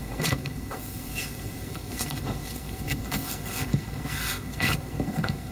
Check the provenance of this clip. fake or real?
fake